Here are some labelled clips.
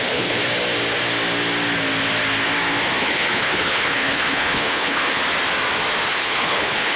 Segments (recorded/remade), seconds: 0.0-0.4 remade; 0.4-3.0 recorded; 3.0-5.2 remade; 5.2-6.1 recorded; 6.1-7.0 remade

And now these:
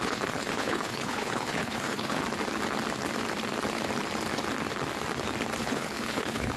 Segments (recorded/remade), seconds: 0.0-2.2 remade; 2.2-5.6 recorded; 5.6-6.6 remade

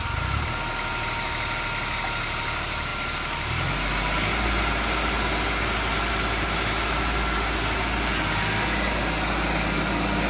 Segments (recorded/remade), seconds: 0.0-10.3 recorded

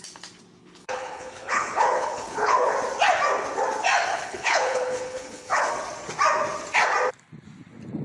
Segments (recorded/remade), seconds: 0.0-0.6 recorded; 0.6-2.7 remade; 2.7-4.1 recorded; 4.1-5.7 remade; 5.7-8.0 recorded

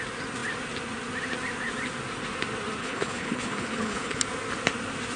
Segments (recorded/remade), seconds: 0.0-2.8 recorded; 2.8-4.2 remade; 4.2-5.2 recorded

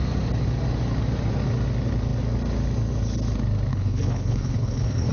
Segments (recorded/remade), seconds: 0.0-3.7 recorded; 3.7-5.1 remade